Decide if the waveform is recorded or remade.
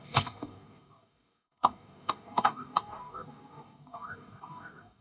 remade